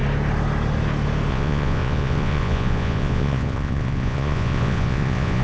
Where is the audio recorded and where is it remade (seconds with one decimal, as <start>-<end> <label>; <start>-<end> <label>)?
0.0-1.3 recorded; 1.3-5.4 remade